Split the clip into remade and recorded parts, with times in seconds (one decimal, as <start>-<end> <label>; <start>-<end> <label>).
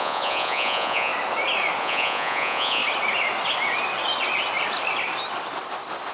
0.0-1.1 remade; 1.1-1.8 recorded; 1.8-2.8 remade; 2.8-6.1 recorded